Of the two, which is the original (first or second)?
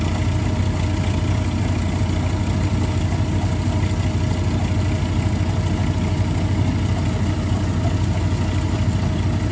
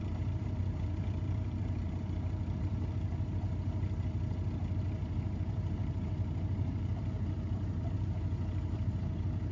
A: first